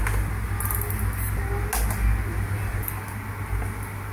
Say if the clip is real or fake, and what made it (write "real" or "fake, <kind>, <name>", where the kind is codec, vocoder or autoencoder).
real